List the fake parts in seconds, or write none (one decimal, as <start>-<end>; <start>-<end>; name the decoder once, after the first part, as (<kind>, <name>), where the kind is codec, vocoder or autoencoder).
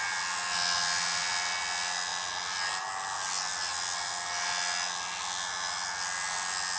none